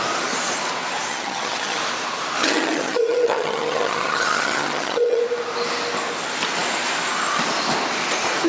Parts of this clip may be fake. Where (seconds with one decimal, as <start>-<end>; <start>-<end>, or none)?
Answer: 1.1-1.8; 2.4-5.2